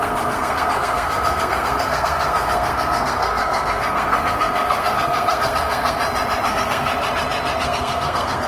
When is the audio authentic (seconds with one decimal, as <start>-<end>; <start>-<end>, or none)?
6.0-6.5; 6.9-7.6